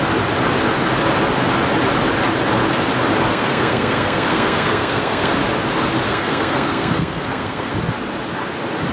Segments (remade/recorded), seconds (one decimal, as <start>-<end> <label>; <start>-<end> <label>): 0.0-3.3 recorded; 3.3-5.3 remade; 5.3-6.1 recorded; 6.1-7.7 remade; 7.7-8.9 recorded